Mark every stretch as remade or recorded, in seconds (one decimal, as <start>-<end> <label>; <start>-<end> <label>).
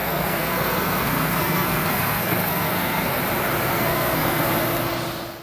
0.0-3.2 remade; 3.2-3.7 recorded; 3.7-4.5 remade; 4.5-5.4 recorded